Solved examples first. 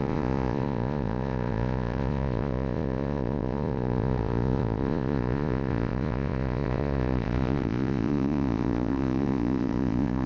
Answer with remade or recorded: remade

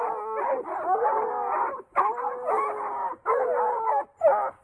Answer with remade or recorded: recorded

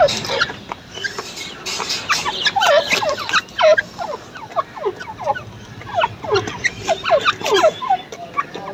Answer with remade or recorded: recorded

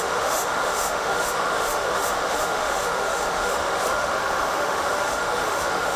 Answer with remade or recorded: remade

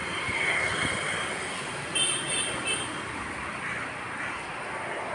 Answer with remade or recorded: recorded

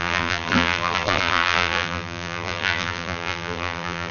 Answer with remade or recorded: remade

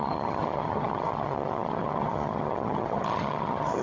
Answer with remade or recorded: remade